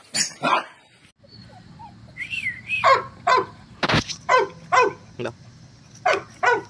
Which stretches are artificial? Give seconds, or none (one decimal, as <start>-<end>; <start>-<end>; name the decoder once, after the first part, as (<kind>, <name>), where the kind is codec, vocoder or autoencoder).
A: 1.4-3.8 (vocoder, BigVGAN v2)